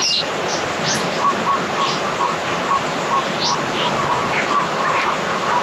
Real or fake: real